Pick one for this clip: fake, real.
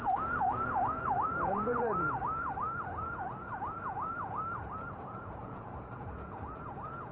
fake